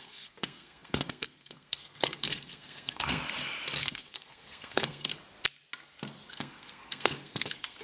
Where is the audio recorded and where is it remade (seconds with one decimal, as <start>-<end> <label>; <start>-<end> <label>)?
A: 0.0-3.2 remade; 3.2-3.8 recorded; 3.8-5.1 remade; 5.1-6.3 recorded; 6.3-7.8 remade